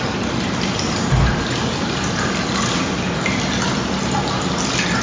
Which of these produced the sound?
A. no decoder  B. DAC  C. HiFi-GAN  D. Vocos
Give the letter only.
A